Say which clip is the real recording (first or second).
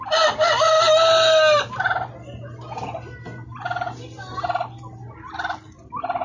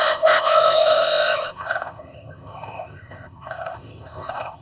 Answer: first